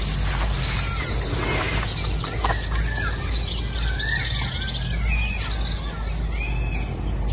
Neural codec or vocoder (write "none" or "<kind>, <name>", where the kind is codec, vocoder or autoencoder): none